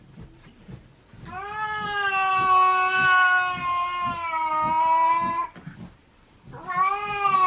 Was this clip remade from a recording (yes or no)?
no